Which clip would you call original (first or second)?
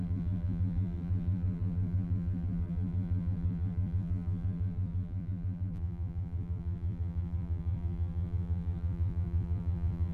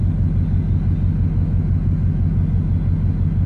second